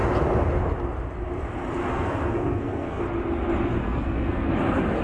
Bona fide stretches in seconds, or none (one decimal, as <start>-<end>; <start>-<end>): 0.0-1.9; 3.0-3.8; 4.5-5.0